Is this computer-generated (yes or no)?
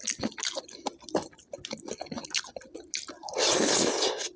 no